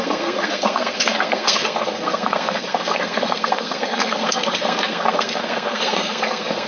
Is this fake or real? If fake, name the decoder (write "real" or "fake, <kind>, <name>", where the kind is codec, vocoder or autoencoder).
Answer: fake, codec, SNAC